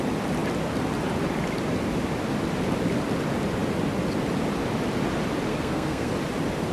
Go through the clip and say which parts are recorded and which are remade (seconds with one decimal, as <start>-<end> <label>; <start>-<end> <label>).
0.0-5.5 recorded; 5.5-6.1 remade; 6.1-6.7 recorded